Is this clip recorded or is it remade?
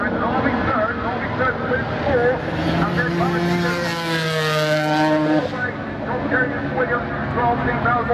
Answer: recorded